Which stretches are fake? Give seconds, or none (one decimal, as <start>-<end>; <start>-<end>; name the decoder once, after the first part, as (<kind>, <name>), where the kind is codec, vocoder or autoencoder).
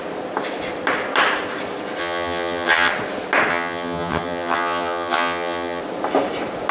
2.0-2.9 (vocoder, HiFi-GAN); 3.5-5.8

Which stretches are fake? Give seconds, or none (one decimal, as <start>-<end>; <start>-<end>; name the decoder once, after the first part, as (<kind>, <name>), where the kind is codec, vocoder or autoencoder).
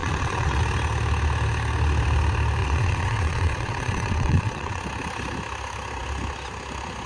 0.0-0.6 (vocoder, WaveNeXt); 2.6-4.8